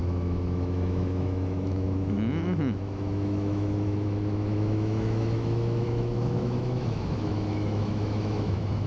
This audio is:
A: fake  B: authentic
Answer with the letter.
A